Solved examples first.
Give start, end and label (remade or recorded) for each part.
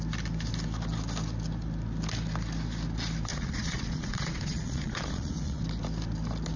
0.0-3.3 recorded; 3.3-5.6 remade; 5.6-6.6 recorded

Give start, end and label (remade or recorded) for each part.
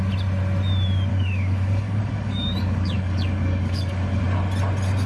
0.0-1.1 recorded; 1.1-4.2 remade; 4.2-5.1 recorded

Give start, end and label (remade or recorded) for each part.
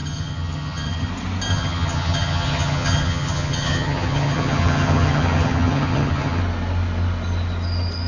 0.0-1.1 remade; 1.1-1.5 recorded; 1.5-6.4 remade; 6.4-8.1 recorded